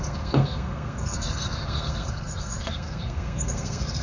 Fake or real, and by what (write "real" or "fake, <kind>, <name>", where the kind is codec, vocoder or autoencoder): fake, codec, SNAC